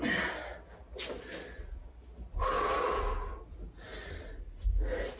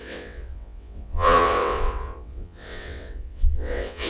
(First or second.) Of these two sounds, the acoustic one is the first